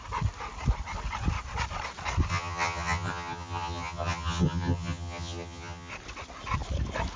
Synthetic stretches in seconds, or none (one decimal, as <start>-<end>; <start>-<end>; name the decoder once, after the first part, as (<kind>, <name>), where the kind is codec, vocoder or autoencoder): 2.3-5.9 (vocoder, HiFi-GAN)